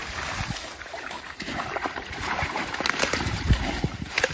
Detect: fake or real fake